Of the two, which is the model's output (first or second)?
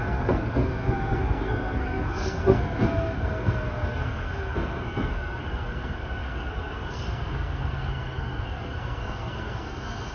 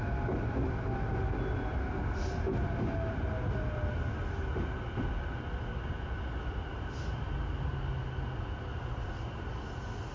first